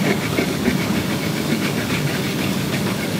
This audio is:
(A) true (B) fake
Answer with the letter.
B